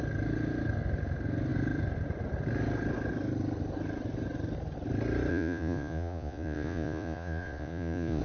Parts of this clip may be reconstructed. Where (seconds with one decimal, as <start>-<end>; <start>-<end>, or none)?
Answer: 5.3-8.2